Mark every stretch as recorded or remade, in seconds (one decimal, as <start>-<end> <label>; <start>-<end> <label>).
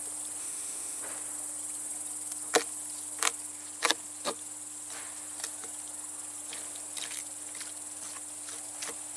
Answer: 0.0-0.4 recorded; 0.4-1.0 remade; 1.0-9.2 recorded